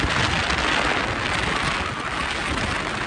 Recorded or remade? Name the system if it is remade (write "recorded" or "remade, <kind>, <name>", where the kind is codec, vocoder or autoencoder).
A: recorded